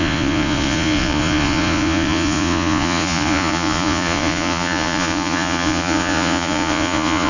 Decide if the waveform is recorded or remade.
remade